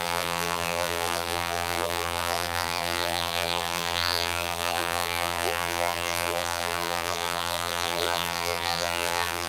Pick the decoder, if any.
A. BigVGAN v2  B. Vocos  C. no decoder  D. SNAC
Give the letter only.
A